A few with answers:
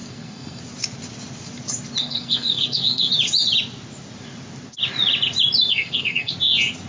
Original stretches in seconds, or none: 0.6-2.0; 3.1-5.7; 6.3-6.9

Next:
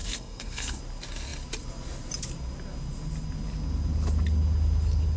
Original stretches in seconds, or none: 0.8-5.2

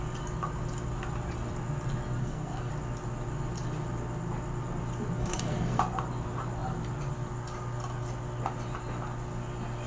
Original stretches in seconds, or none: 0.0-2.2; 2.7-5.2; 5.8-9.9

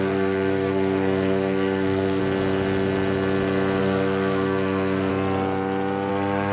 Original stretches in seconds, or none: 2.2-3.8; 5.1-6.1

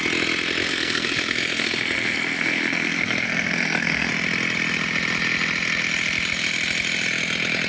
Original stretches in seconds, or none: 0.0-0.7; 4.1-7.7

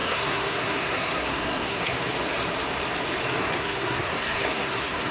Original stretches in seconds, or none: 1.9-3.4

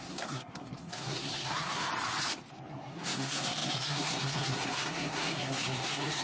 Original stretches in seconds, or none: 1.9-2.7